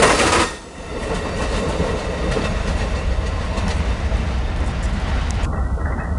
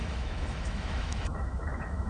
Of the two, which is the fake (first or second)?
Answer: second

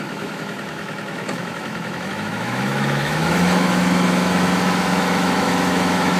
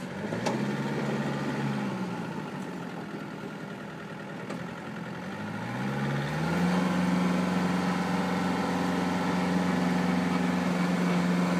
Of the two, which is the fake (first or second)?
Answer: first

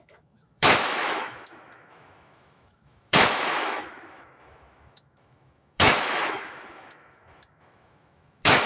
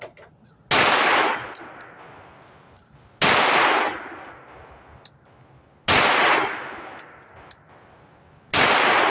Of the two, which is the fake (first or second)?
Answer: first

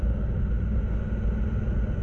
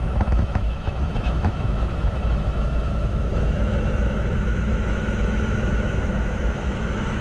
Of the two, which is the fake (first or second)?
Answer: second